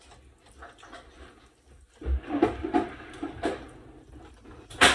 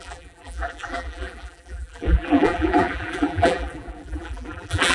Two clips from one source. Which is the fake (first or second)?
second